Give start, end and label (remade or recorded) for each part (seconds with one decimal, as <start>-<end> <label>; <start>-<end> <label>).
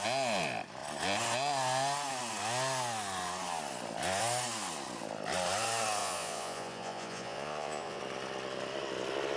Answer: 0.0-6.0 recorded; 6.0-8.0 remade; 8.0-9.4 recorded